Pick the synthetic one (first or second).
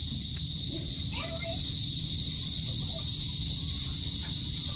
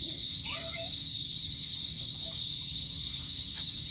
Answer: second